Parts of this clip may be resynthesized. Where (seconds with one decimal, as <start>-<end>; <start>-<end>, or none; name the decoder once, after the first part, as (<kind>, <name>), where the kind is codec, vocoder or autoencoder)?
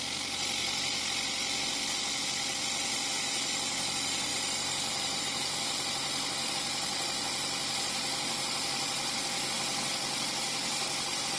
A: none